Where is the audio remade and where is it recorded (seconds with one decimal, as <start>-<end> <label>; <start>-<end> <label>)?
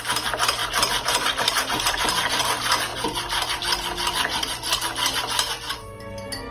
0.0-6.5 recorded